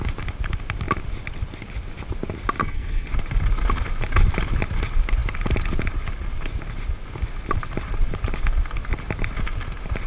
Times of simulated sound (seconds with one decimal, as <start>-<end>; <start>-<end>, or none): 2.6-3.1